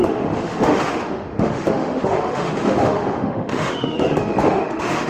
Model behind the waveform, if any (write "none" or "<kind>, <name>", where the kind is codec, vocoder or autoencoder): autoencoder, DAC-VAE